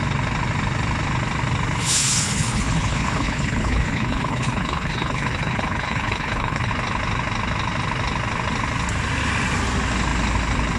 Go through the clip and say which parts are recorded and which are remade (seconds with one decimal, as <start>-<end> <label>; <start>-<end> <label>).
0.0-1.8 recorded; 1.8-6.7 remade; 6.7-10.8 recorded